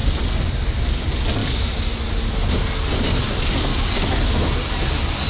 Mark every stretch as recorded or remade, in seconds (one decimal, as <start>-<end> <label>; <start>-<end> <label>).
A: 0.0-5.3 recorded

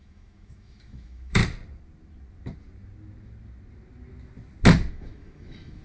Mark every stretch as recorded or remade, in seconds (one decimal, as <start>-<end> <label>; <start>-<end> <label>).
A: 0.0-1.4 remade; 1.4-4.9 recorded; 4.9-5.8 remade

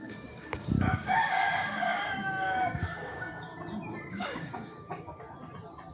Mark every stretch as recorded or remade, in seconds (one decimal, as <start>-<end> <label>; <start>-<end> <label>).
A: 0.0-3.5 remade; 3.5-4.1 recorded; 4.1-5.1 remade; 5.1-5.9 recorded

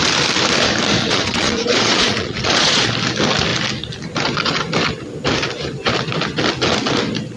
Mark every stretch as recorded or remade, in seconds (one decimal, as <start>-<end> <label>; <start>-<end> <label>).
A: 0.0-1.0 recorded; 1.0-2.9 remade; 2.9-7.4 recorded